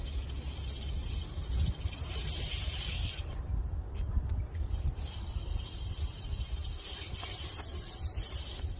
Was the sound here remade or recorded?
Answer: recorded